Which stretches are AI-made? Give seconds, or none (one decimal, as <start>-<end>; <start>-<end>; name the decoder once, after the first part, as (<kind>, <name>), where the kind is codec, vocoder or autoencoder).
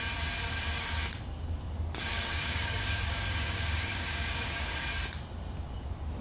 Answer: 2.1-4.8 (codec, DAC)